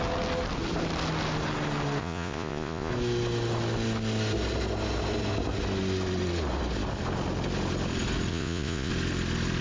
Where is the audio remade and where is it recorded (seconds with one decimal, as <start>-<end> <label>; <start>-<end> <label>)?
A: 0.0-2.0 recorded; 2.0-2.9 remade; 2.9-8.3 recorded; 8.3-8.9 remade; 8.9-9.6 recorded